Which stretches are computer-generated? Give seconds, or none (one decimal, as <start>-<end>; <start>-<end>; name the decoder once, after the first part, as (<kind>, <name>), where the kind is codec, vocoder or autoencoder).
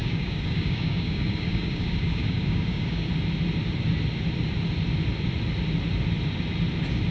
0.0-3.1 (codec, DAC)